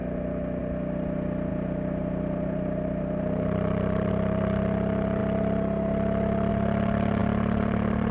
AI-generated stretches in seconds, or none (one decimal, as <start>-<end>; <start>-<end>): 1.5-4.1; 7.2-8.1